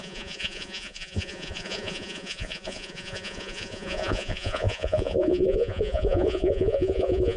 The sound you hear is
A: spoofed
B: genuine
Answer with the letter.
A